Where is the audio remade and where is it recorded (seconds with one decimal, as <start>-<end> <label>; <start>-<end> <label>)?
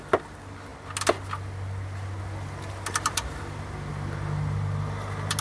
0.0-5.4 recorded